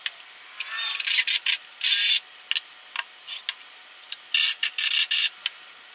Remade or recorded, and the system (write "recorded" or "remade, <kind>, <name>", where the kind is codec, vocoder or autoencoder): recorded